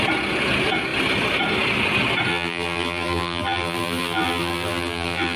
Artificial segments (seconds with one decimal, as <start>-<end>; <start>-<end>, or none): 2.3-5.4